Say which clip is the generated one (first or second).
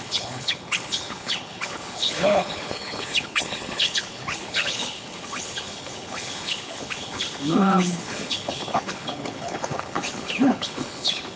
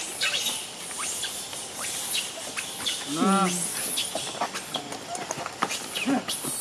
first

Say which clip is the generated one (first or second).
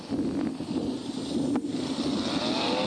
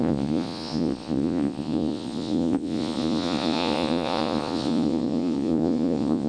second